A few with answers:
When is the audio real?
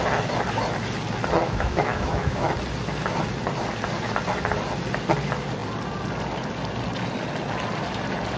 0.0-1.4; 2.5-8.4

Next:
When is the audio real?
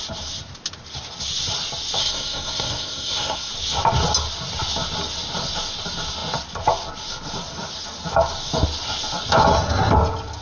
0.0-2.0; 3.5-10.4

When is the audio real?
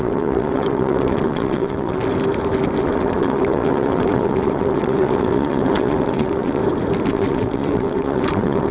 2.0-2.8; 6.6-7.1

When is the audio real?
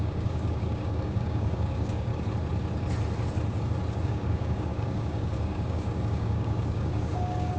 2.1-4.0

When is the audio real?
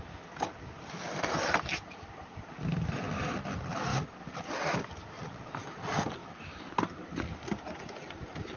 0.0-6.2; 6.7-8.6